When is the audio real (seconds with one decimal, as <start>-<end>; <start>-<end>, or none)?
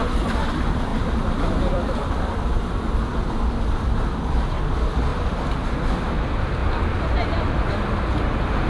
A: 0.0-0.9; 4.6-5.1; 5.7-8.7